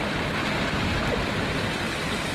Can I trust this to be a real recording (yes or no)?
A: yes